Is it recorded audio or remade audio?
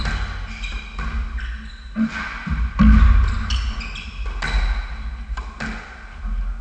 recorded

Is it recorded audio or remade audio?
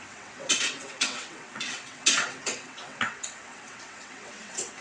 remade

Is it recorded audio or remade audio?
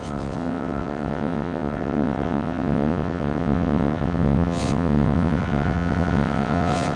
remade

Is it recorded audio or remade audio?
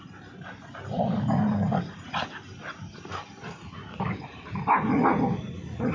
recorded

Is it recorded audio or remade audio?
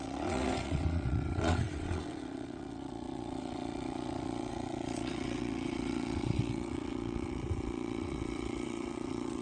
remade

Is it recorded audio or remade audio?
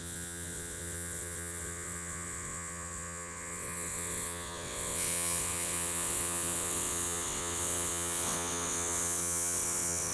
remade